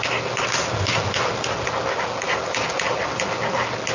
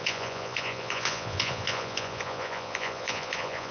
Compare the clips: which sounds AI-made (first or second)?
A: second